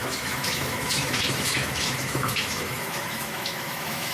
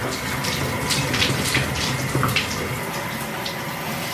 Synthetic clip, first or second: first